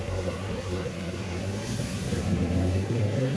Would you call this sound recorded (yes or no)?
no